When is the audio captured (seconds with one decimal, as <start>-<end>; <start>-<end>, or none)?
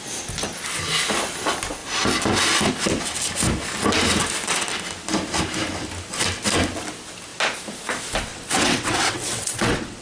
0.0-8.3